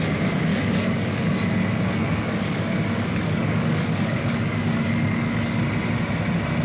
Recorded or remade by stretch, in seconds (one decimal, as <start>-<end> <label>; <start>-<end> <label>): 0.0-0.5 recorded; 0.5-1.2 remade; 1.2-2.0 recorded; 2.0-5.6 remade; 5.6-6.6 recorded